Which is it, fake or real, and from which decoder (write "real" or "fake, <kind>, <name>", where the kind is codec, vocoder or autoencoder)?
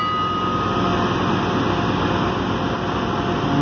real